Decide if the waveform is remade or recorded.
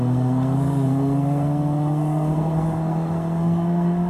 remade